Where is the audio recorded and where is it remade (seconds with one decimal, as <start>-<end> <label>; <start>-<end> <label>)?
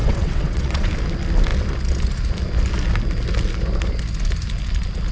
0.0-0.9 remade; 0.9-5.1 recorded